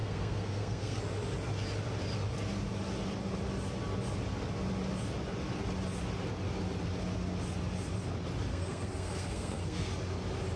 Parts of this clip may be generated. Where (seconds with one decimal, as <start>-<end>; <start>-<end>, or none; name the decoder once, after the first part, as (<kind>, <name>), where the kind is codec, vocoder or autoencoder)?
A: 0.0-1.0 (codec, SNAC); 8.5-9.9